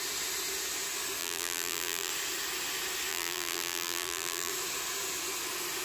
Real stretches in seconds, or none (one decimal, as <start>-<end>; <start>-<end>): 0.0-1.2; 2.1-3.1; 4.5-5.8